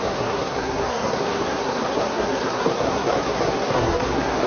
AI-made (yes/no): yes